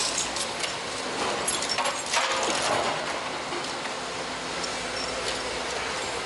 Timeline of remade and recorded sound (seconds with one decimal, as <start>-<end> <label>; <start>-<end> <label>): 0.0-0.6 remade; 0.6-6.3 recorded